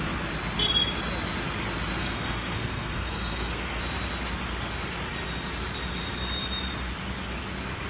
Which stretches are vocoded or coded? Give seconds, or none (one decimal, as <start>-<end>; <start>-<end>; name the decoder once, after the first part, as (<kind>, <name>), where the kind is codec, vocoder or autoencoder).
2.0-3.8 (codec, SNAC)